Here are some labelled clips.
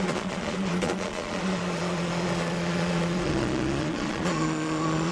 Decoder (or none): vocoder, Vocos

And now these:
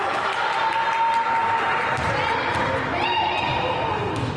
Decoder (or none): vocoder, BigVGAN v2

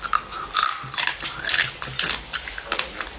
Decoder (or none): none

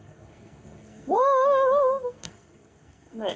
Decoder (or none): codec, SNAC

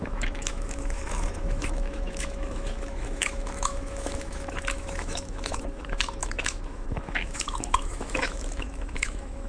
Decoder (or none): autoencoder, DAC-VAE